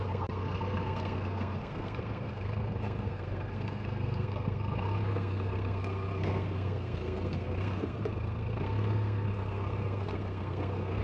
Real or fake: fake